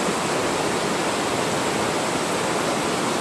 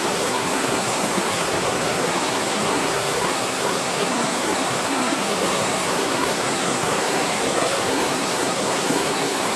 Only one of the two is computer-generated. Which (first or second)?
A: second